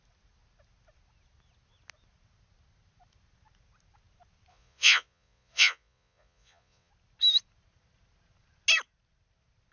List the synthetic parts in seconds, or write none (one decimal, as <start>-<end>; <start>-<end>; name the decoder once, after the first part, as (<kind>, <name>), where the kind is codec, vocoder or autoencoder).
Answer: 4.5-6.9 (vocoder, Vocos)